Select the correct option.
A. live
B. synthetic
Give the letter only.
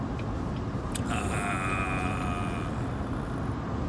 A